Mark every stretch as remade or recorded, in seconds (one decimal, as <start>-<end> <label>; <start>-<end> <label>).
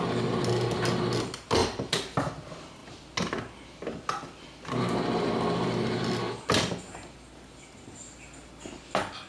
0.0-9.3 recorded